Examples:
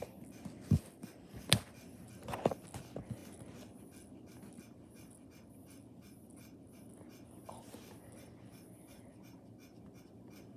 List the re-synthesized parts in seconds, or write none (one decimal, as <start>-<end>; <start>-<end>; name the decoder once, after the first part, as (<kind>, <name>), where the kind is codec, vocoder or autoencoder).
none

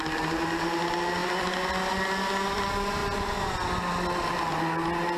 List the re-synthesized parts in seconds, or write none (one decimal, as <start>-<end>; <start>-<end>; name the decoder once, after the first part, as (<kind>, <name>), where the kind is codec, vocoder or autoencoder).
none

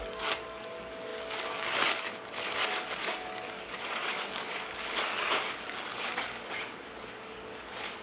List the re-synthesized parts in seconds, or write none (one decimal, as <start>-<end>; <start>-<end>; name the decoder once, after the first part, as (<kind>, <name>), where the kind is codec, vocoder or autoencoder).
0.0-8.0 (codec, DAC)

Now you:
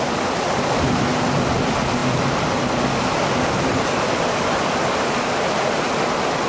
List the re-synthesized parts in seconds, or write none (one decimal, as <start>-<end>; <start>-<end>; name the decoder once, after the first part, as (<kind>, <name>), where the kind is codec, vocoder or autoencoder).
none